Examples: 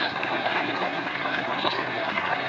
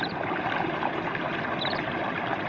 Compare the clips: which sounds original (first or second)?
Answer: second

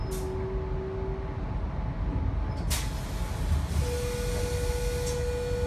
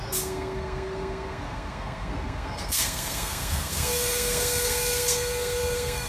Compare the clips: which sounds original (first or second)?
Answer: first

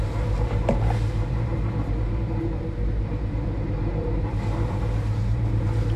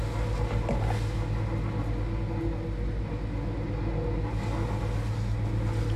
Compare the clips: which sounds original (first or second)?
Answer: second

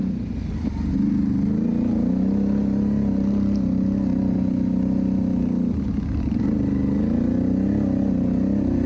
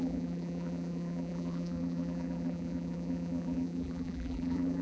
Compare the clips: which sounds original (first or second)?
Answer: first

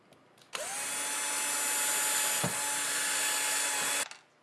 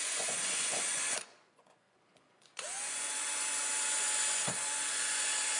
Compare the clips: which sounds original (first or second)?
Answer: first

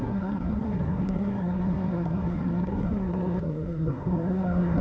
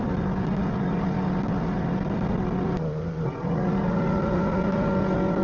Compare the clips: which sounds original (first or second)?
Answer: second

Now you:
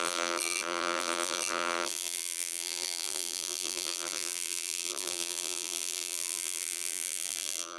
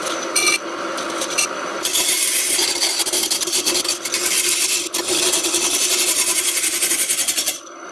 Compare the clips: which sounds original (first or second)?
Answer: second